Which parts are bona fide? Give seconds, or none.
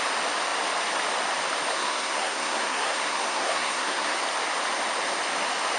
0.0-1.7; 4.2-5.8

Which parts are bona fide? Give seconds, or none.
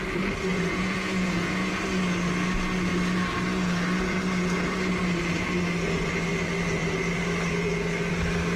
0.0-0.5; 1.7-8.6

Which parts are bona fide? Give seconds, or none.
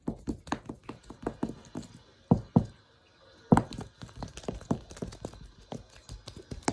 0.0-6.7